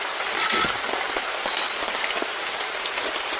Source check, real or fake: real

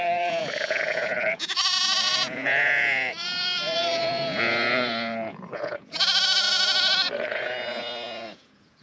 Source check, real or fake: fake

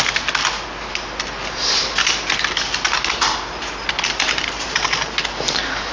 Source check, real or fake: real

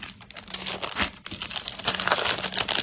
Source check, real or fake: real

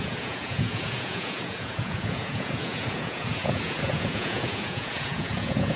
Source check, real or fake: fake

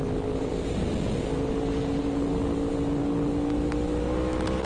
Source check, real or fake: real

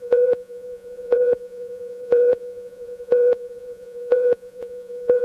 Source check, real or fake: fake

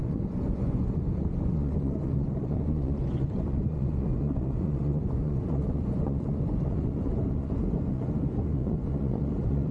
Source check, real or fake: fake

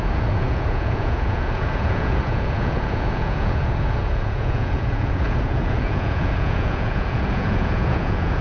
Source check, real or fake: fake